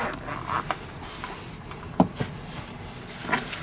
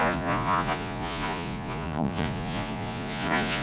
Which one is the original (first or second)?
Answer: first